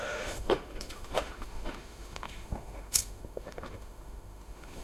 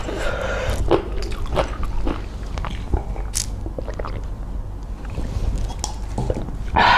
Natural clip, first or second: second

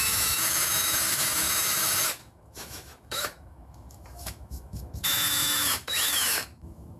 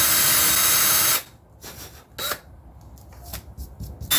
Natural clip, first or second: second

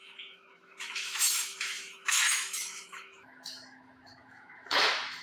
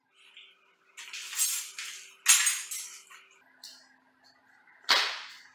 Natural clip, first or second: second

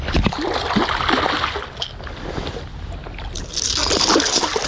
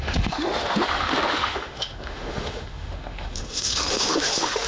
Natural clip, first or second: first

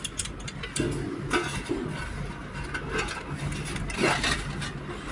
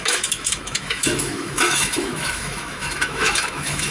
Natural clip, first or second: first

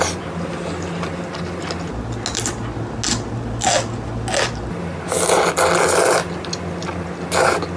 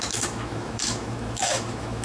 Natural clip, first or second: first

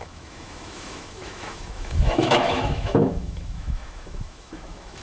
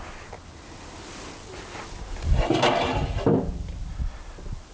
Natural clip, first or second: second